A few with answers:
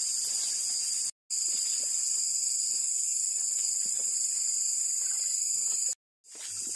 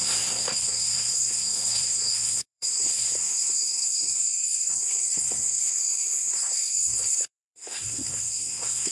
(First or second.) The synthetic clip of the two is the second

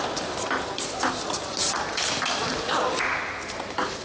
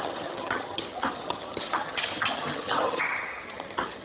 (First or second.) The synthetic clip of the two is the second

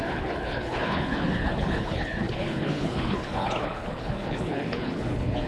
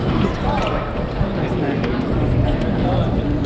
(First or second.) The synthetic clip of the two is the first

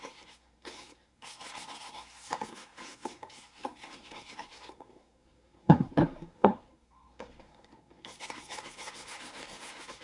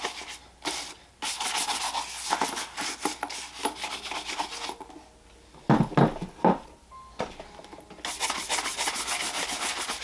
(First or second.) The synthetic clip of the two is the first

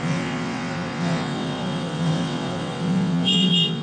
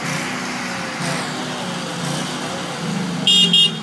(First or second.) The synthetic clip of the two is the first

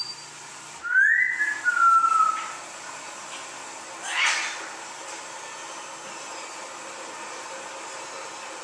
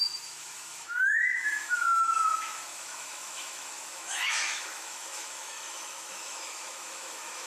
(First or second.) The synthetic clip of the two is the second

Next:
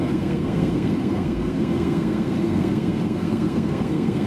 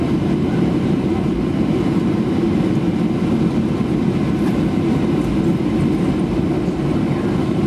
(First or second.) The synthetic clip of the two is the first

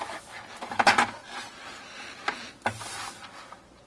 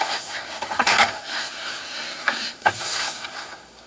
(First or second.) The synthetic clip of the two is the second